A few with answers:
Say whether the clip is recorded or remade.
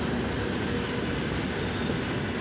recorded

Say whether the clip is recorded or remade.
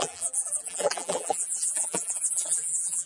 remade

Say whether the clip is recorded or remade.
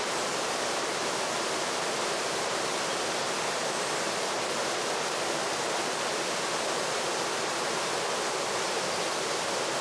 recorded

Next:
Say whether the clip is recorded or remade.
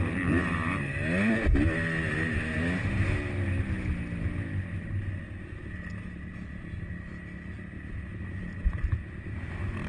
recorded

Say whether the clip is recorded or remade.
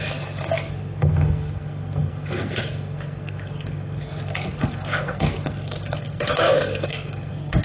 remade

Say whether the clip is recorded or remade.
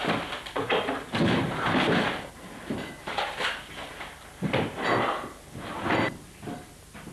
remade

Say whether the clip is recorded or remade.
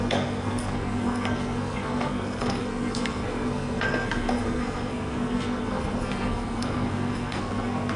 remade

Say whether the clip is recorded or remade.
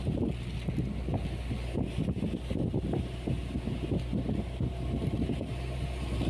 recorded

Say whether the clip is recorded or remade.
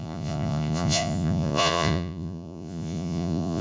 remade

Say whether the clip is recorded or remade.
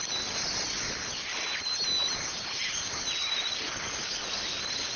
recorded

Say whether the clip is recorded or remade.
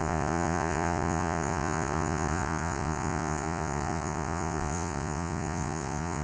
remade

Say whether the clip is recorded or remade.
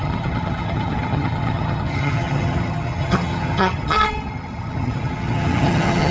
remade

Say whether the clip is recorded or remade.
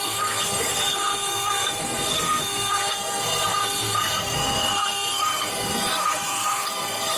remade